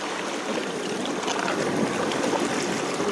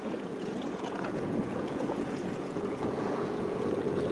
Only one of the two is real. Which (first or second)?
first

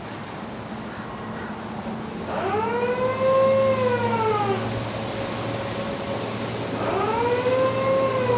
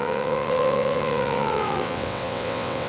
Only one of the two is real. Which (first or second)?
first